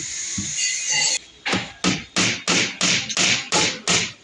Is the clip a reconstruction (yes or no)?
no